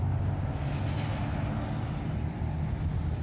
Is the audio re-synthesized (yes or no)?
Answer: no